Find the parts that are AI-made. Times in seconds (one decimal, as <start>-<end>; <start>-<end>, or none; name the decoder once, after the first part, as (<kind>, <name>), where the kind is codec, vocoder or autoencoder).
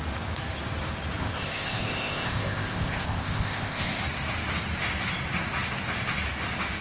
1.2-4.0 (codec, ZipCodec)